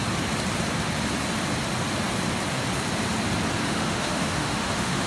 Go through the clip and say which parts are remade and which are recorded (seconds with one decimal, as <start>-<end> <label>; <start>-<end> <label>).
0.0-3.6 recorded; 3.6-5.1 remade